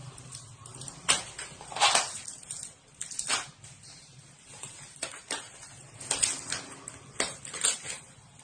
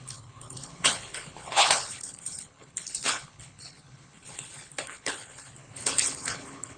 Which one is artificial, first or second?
second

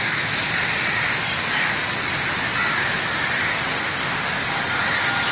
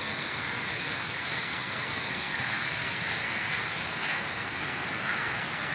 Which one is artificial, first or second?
second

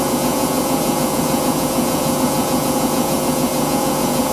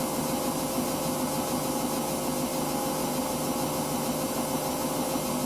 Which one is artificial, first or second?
first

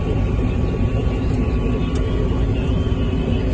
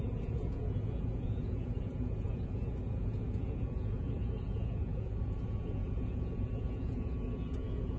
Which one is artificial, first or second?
second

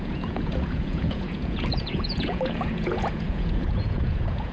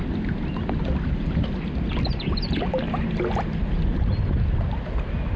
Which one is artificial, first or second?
first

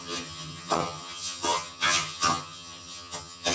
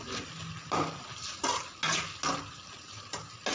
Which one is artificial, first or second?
first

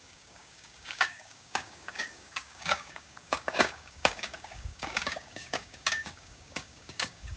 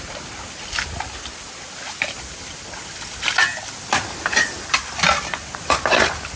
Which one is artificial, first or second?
first